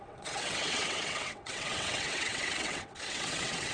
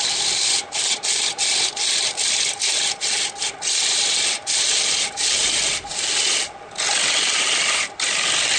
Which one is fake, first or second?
first